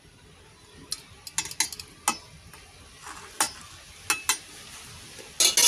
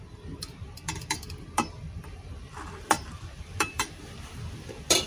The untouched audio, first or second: first